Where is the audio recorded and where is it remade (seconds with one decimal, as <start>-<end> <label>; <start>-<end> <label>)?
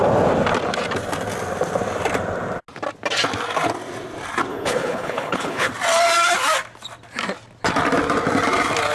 0.0-4.5 recorded; 4.5-5.7 remade; 5.7-8.9 recorded